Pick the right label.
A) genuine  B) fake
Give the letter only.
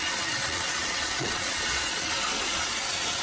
B